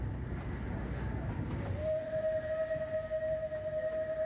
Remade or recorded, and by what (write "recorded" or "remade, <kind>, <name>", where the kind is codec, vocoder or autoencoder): recorded